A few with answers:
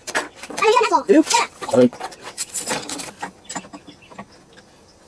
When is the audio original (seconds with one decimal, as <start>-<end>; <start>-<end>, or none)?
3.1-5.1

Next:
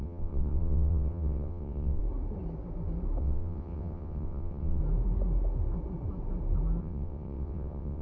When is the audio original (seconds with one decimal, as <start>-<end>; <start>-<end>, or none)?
2.0-3.2; 4.8-6.8

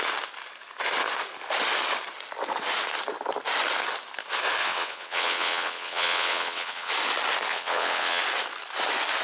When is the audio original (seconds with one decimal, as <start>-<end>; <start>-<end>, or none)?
0.0-4.6; 6.9-7.5; 8.2-9.2

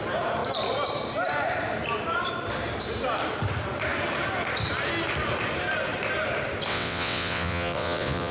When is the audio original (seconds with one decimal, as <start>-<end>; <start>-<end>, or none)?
0.0-6.7